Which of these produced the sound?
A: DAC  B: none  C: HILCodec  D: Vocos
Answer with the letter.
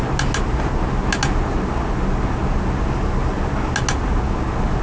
B